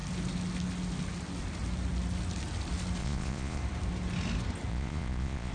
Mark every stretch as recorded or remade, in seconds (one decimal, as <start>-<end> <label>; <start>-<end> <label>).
0.0-3.0 recorded; 3.0-3.6 remade; 3.6-4.7 recorded; 4.7-5.5 remade